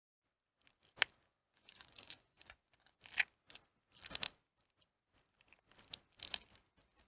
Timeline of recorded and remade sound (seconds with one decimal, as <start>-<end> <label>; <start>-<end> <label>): 0.0-1.4 recorded; 1.4-3.0 remade; 3.0-7.1 recorded